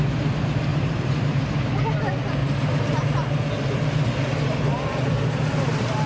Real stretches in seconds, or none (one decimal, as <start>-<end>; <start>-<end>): 0.0-0.7; 1.7-2.4; 3.0-4.3; 5.1-6.1